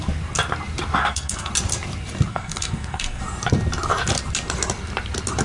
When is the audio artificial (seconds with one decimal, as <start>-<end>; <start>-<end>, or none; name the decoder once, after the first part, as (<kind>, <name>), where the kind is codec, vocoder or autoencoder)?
1.0-1.5 (codec, SNAC); 2.3-3.2